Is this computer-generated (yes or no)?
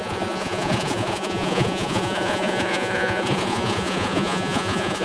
yes